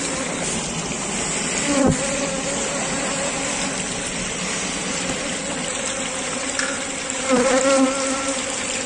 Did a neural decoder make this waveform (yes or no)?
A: no